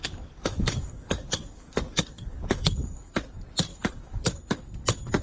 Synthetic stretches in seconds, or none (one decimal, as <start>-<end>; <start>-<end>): 0.0-3.1; 3.7-4.4